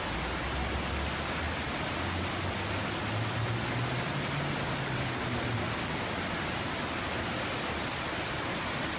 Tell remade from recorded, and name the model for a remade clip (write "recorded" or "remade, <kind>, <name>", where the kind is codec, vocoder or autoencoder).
recorded